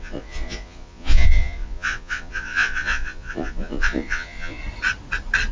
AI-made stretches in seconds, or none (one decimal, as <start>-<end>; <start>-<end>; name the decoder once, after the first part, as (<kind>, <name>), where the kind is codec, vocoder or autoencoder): 0.0-4.6 (vocoder, Vocos)